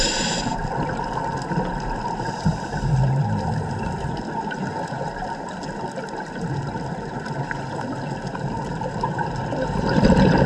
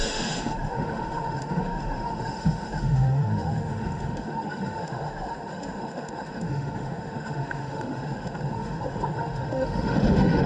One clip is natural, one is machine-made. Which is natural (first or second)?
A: first